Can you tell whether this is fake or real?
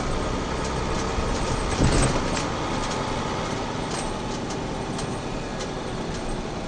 real